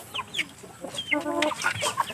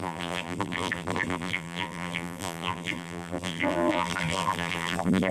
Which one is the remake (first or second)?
second